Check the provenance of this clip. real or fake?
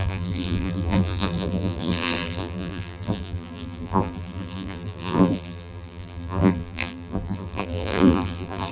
fake